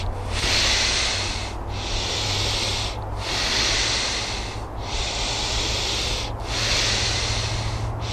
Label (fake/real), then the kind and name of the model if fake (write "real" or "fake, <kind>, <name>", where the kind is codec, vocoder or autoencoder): real